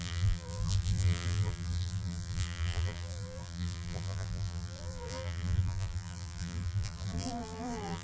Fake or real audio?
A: fake